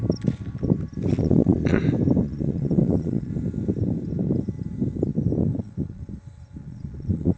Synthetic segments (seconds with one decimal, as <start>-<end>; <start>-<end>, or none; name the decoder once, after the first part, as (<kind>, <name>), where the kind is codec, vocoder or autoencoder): 1.1-1.8 (vocoder, Vocos); 2.2-3.3; 5.4-6.0; 6.6-7.4